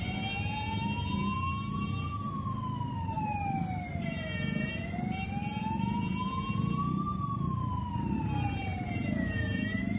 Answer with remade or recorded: recorded